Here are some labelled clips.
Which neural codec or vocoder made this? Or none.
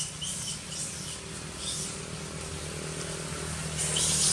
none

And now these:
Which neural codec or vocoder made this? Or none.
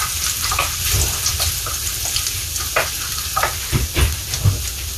none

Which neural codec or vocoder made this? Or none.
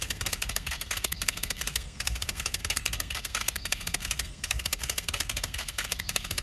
codec, SNAC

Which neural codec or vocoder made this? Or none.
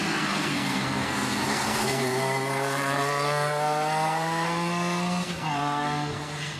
codec, SNAC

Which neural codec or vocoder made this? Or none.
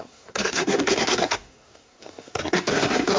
codec, SNAC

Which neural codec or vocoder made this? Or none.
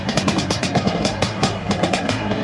codec, SNAC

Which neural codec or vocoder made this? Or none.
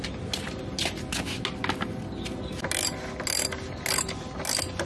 none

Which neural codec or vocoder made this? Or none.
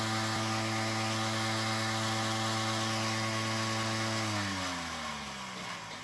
none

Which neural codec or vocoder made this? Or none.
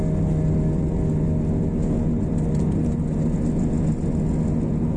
none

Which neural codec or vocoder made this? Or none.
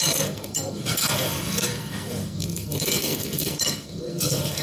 codec, SNAC